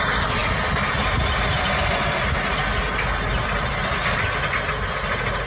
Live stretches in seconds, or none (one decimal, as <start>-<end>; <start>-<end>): 0.0-5.5